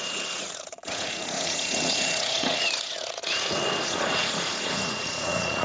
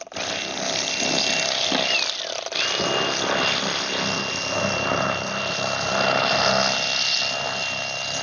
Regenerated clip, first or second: first